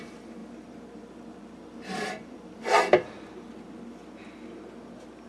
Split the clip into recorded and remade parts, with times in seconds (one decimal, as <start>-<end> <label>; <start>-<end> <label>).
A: 0.0-0.4 recorded; 0.4-3.6 remade; 3.6-5.3 recorded